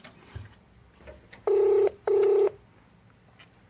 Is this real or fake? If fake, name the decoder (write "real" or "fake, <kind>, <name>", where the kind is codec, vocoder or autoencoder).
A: real